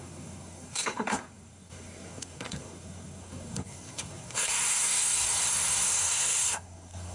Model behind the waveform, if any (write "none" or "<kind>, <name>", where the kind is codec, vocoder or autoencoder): codec, SNAC